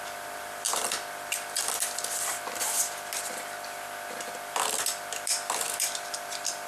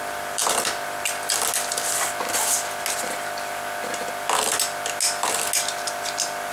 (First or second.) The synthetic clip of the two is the first